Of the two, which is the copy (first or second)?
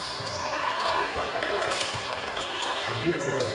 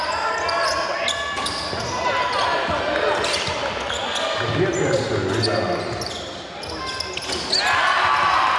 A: first